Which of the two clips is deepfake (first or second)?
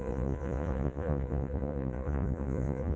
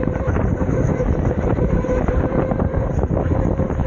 first